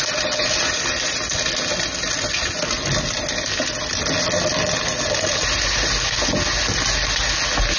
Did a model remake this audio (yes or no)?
no